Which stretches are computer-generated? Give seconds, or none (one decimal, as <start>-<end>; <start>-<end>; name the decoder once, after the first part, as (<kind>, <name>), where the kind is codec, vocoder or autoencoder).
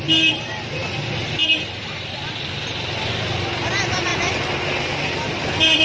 none